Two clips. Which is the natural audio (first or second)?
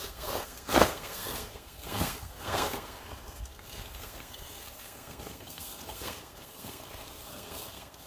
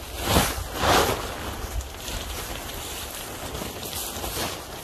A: second